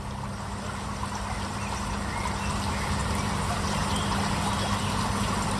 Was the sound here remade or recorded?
recorded